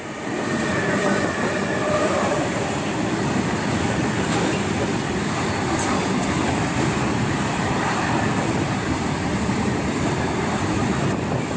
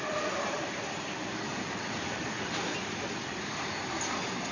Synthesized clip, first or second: first